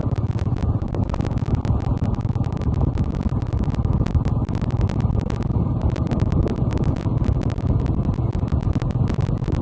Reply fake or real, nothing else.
fake